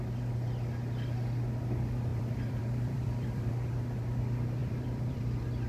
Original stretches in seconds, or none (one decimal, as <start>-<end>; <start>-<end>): 0.0-2.1; 3.5-4.6